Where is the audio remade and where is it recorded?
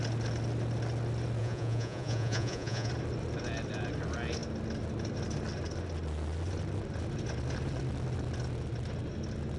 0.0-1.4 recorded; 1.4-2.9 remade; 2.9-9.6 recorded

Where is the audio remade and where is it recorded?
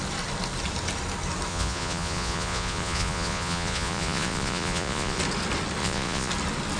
0.0-1.5 recorded; 1.5-5.2 remade; 5.2-5.8 recorded; 5.8-6.3 remade; 6.3-6.8 recorded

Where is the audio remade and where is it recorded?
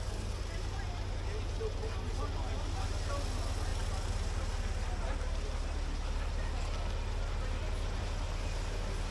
0.0-9.1 recorded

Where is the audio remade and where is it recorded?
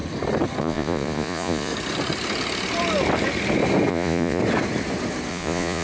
0.0-0.6 recorded; 0.6-1.7 remade; 1.7-3.9 recorded; 3.9-4.4 remade; 4.4-5.3 recorded; 5.3-5.8 remade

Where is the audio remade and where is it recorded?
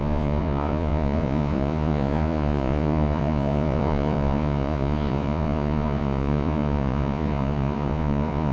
0.0-8.5 remade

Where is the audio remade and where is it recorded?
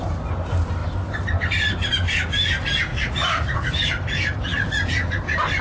0.0-2.9 recorded; 2.9-3.7 remade; 3.7-5.6 recorded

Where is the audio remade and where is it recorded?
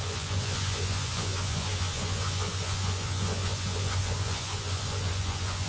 0.0-5.7 remade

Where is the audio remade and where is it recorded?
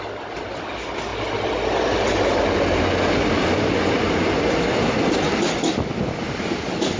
0.0-7.0 recorded